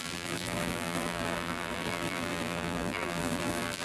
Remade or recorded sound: remade